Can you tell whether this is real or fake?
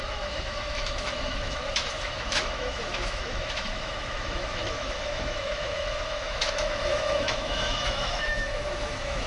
fake